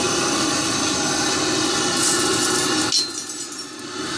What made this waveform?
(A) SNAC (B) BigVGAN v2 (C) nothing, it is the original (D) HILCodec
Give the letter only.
C